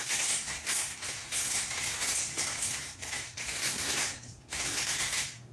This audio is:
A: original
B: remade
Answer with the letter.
B